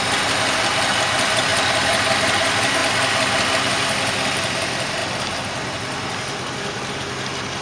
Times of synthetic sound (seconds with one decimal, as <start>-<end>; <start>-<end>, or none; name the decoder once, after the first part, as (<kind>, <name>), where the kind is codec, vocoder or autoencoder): 0.0-1.5 (vocoder, BigVGAN v2); 2.1-5.0